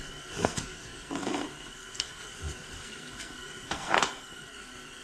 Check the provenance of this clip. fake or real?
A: fake